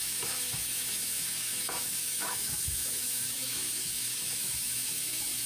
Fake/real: fake